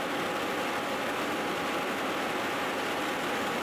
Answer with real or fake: real